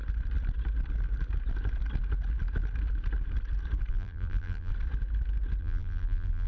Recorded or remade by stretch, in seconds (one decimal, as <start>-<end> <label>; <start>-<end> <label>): 0.0-3.9 recorded; 3.9-4.7 remade; 4.7-5.6 recorded; 5.6-6.5 remade